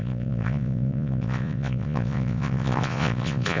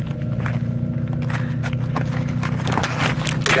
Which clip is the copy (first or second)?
first